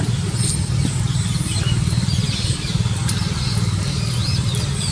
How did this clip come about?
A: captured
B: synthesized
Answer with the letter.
B